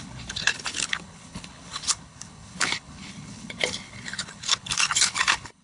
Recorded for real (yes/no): no